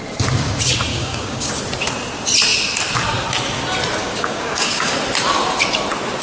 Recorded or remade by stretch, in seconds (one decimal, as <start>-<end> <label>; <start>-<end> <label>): 0.0-0.9 recorded; 0.9-1.5 remade; 1.5-4.0 recorded; 4.0-4.9 remade; 4.9-6.2 recorded